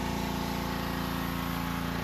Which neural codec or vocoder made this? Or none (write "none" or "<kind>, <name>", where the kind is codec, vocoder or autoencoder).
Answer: none